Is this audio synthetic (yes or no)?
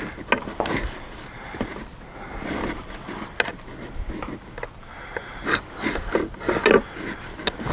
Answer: no